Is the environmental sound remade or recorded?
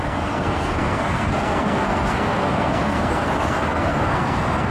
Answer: remade